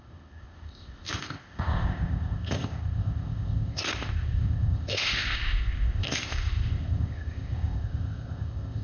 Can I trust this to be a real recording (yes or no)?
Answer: no